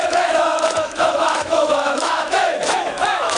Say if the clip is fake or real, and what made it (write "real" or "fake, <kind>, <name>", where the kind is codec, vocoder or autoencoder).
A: fake, autoencoder, DAC-VAE